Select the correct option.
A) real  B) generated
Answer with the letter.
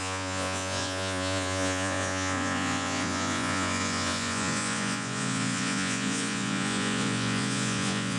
B